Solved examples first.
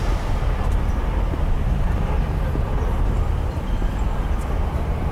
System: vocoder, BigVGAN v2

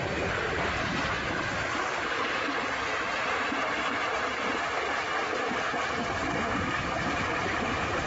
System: vocoder, BigVGAN v2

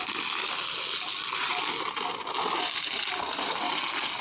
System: none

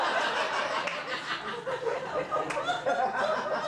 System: none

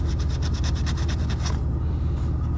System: none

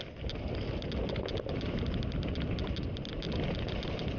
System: none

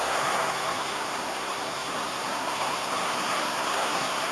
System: codec, SNAC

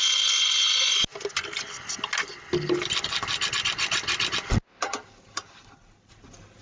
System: none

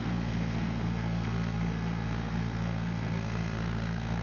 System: codec, SNAC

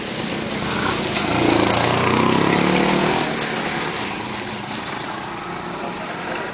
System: none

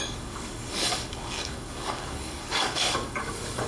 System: codec, DAC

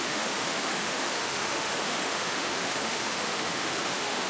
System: autoencoder, DAC-VAE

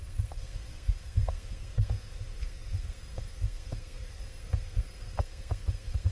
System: codec, SNAC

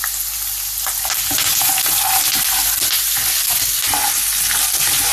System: none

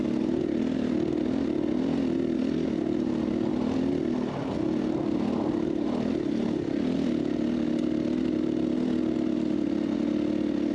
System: none